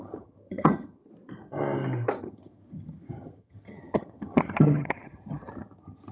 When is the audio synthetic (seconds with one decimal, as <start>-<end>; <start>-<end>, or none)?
0.0-1.0; 2.2-6.1

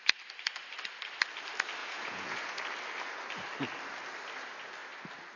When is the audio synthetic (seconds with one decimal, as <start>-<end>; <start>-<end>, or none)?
1.8-2.5

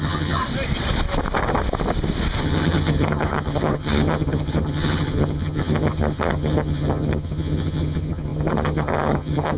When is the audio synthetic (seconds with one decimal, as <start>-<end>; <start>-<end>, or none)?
0.0-0.4; 2.4-9.6